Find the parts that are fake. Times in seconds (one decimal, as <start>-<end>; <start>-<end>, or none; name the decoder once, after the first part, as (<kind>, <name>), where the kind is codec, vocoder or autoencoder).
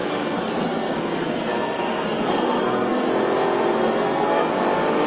0.0-3.1 (codec, SNAC); 3.8-4.5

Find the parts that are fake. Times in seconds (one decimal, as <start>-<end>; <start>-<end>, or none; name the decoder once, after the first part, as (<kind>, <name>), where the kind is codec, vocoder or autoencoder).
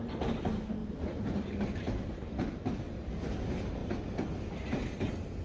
0.8-2.3 (vocoder, BigVGAN v2)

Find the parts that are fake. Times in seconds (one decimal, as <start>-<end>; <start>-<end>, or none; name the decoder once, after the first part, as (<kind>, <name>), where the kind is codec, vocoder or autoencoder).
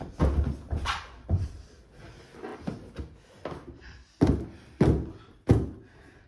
none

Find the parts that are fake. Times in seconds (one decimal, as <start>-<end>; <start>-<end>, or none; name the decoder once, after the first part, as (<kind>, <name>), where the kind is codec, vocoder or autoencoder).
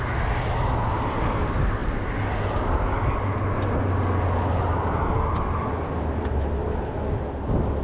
none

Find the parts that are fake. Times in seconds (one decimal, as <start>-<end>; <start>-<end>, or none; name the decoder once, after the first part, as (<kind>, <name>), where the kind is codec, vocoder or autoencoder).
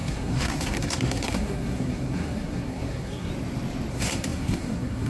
0.0-3.3 (codec, SNAC); 3.9-5.1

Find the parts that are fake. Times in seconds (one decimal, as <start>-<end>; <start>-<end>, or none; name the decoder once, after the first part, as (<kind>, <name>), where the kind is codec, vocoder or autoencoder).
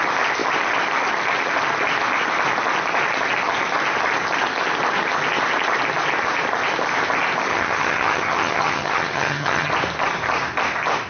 7.5-9.7 (vocoder, HiFi-GAN)